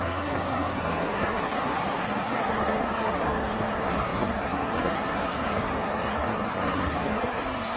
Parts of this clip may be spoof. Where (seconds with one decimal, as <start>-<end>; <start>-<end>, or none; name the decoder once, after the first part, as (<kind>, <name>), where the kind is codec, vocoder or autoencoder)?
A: 0.0-7.8 (codec, SNAC)